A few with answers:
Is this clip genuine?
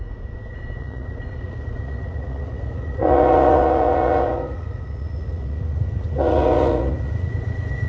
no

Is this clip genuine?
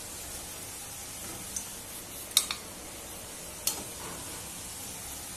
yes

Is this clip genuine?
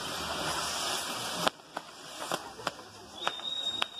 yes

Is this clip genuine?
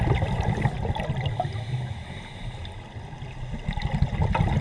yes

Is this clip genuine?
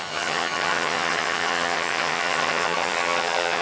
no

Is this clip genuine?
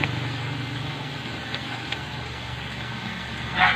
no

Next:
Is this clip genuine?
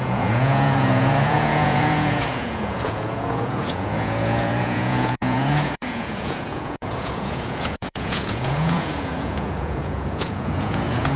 no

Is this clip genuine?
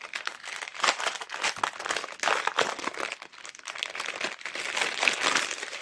yes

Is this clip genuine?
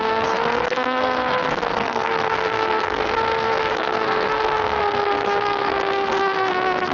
no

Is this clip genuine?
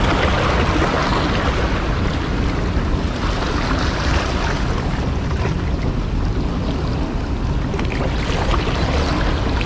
yes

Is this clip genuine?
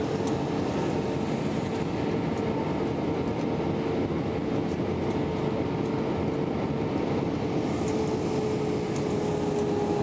yes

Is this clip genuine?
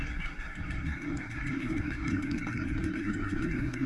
no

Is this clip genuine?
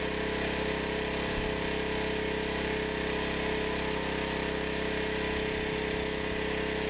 yes